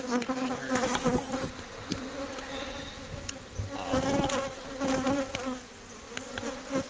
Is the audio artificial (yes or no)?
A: no